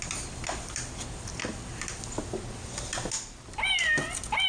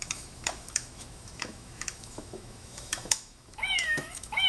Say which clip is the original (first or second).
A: first